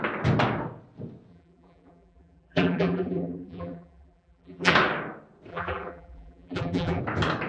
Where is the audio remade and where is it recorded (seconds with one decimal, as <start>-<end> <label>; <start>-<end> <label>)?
0.0-1.3 recorded; 1.3-4.7 remade; 4.7-5.5 recorded; 5.5-7.0 remade; 7.0-7.5 recorded